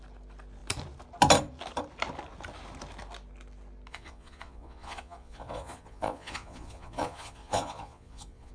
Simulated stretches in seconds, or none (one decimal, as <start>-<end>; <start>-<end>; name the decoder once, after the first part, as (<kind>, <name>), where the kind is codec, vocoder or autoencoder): 3.9-8.5 (vocoder, Vocos)

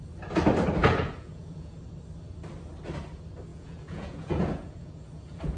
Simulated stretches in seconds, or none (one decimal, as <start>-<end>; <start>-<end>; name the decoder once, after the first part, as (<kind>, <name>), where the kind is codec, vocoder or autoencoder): 0.8-1.8 (vocoder, Vocos); 3.5-5.6

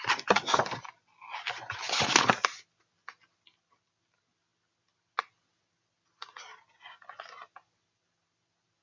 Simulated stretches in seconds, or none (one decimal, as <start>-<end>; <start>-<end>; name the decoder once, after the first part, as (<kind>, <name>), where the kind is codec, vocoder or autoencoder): none

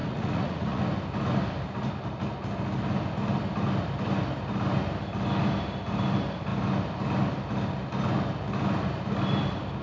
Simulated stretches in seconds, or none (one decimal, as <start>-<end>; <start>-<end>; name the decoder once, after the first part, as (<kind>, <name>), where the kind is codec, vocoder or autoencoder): 0.0-0.8 (vocoder, Vocos)

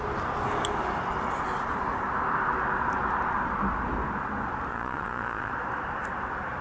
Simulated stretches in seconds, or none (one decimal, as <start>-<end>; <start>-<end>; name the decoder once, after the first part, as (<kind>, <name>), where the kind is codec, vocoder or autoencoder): 4.7-5.5 (vocoder, Vocos)